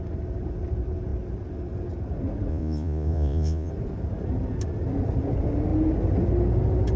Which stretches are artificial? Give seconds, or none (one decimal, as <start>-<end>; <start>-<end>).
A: 2.5-3.7